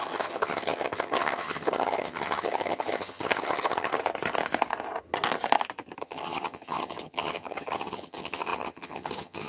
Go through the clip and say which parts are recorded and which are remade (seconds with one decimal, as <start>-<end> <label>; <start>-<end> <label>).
0.0-3.9 remade; 3.9-6.0 recorded; 6.0-9.5 remade